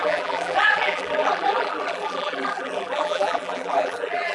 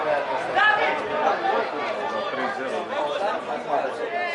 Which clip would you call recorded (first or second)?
second